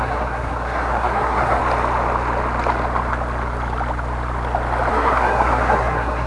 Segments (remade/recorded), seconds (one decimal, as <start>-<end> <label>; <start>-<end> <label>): 0.0-1.6 remade; 1.6-4.9 recorded; 4.9-6.3 remade